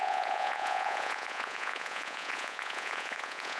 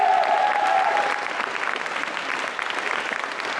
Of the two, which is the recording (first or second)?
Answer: second